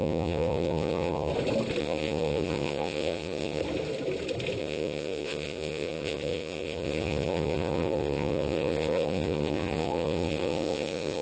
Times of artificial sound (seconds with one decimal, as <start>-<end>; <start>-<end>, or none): 0.0-1.3; 1.8-3.6; 4.6-11.2